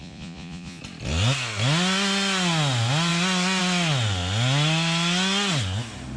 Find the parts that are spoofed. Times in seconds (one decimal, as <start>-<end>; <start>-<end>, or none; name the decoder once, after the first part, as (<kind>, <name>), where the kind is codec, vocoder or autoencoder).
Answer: 0.0-0.8 (vocoder, Vocos)